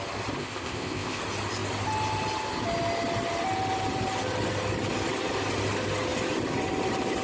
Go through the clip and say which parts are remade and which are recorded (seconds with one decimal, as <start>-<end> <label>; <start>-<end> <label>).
0.0-0.4 recorded; 0.4-1.2 remade; 1.2-7.2 recorded